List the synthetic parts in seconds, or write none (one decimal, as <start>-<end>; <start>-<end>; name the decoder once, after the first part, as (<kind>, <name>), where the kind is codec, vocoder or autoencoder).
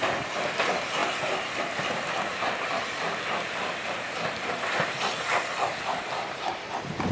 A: none